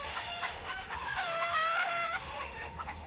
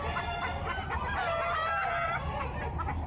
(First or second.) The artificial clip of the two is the first